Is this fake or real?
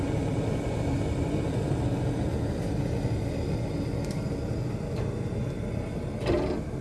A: real